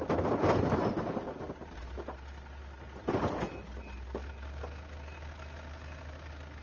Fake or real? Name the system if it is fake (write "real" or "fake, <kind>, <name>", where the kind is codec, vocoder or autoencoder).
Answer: real